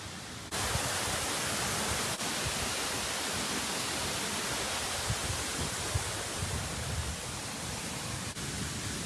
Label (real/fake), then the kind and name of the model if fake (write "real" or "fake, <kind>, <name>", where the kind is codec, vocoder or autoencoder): real